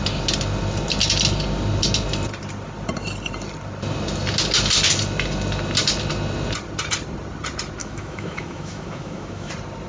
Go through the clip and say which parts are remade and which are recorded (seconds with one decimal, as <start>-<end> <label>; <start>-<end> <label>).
0.0-7.8 recorded; 7.8-9.5 remade; 9.5-9.9 recorded